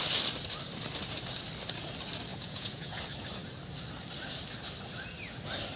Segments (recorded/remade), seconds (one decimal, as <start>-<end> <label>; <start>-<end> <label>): 0.0-2.3 recorded; 2.3-3.0 remade; 3.0-5.8 recorded